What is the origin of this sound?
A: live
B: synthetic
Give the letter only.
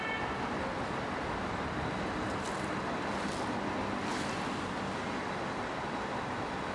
A